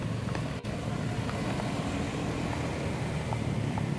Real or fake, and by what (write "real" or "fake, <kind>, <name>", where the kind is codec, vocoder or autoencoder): real